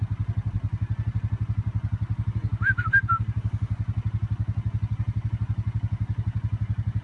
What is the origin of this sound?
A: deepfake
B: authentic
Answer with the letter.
B